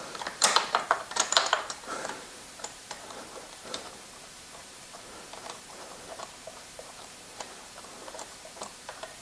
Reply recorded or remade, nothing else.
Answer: remade